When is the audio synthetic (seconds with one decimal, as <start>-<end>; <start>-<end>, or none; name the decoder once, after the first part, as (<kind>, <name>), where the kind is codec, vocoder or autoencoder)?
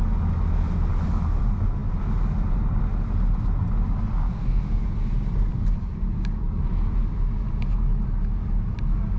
4.3-4.8 (codec, SNAC)